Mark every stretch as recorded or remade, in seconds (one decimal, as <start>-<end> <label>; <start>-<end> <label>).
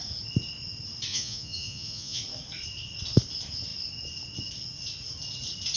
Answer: 0.0-1.1 recorded; 1.1-2.2 remade; 2.2-5.8 recorded